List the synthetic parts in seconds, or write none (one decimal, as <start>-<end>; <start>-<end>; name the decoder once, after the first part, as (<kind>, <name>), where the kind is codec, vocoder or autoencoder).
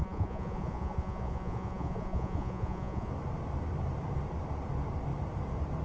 0.0-3.1 (vocoder, Vocos)